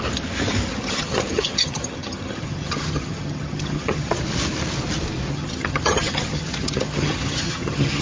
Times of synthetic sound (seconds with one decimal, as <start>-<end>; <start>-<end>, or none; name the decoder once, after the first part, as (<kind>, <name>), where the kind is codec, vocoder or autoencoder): 0.7-4.2 (vocoder, HiFi-GAN); 5.3-8.0